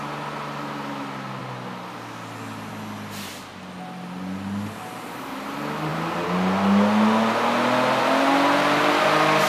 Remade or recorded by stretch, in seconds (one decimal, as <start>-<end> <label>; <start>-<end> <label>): 0.0-9.5 recorded